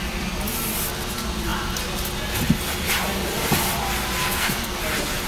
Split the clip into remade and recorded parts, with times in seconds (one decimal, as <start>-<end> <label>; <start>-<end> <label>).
0.0-4.2 recorded; 4.2-4.8 remade; 4.8-5.3 recorded